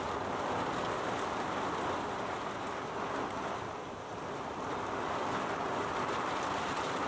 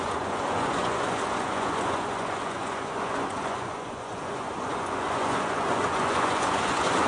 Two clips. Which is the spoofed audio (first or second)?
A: second